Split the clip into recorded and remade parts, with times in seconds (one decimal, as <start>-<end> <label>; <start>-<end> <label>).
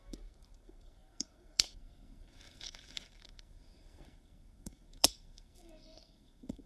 0.0-6.7 remade